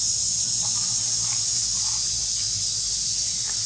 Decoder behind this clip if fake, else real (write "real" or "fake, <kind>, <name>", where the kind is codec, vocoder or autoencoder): real